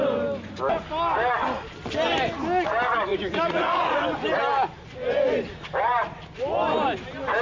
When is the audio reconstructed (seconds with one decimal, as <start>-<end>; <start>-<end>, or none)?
3.1-4.0